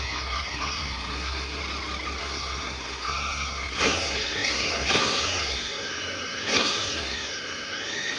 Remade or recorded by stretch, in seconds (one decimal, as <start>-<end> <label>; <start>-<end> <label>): 0.0-1.6 remade; 1.6-2.2 recorded; 2.2-8.2 remade